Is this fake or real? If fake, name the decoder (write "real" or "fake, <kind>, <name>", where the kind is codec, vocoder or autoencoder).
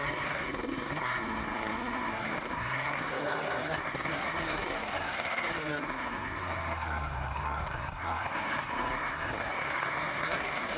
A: fake, codec, SNAC